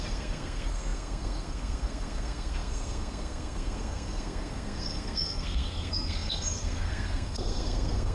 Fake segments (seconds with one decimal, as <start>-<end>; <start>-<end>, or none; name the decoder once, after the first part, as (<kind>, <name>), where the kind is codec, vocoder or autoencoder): 0.0-8.1 (codec, SNAC)